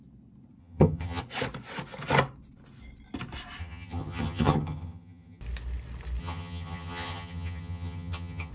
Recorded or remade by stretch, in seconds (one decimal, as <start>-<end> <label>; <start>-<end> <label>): 0.0-0.6 recorded; 0.6-1.2 remade; 1.2-3.6 recorded; 3.6-5.4 remade; 5.4-6.2 recorded; 6.2-8.5 remade

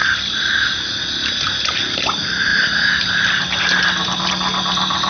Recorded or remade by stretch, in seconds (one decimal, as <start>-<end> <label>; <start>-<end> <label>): 0.0-5.1 recorded

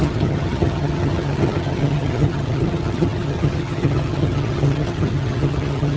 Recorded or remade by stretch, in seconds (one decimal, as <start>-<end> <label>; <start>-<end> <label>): 0.0-6.0 remade

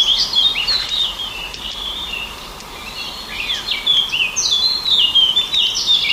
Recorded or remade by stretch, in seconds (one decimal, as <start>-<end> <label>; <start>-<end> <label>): 0.0-0.5 recorded; 0.5-3.2 remade; 3.2-4.6 recorded; 4.6-6.1 remade

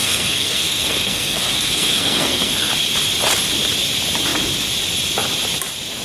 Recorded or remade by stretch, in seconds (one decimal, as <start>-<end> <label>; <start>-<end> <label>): 0.0-2.7 remade; 2.7-6.0 recorded

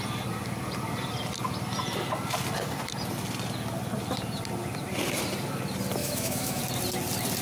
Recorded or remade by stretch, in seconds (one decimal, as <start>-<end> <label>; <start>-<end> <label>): 0.0-6.0 recorded; 6.0-6.6 remade; 6.6-7.4 recorded

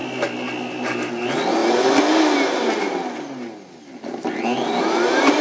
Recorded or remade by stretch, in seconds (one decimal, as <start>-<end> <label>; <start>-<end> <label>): 0.0-5.4 recorded

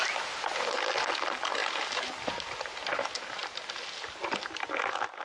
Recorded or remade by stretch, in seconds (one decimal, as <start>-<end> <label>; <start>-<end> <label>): 0.0-5.2 recorded